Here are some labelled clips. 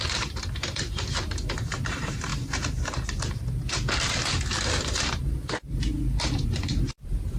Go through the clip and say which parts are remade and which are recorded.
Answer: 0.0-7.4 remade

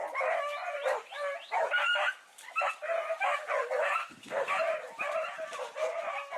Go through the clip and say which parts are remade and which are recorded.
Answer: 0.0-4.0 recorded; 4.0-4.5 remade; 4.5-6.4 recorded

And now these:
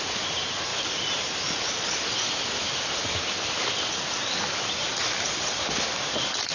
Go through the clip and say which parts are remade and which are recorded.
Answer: 0.0-6.5 recorded

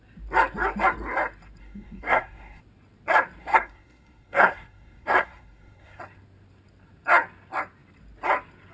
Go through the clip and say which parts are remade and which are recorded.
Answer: 0.0-1.6 recorded; 1.6-2.6 remade; 2.6-3.4 recorded; 3.4-6.0 remade; 6.0-8.7 recorded

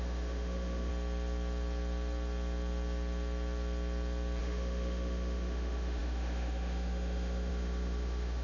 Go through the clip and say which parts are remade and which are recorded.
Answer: 0.0-0.9 remade; 0.9-4.4 recorded; 4.4-8.4 remade